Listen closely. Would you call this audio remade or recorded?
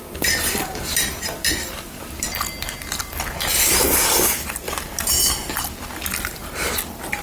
recorded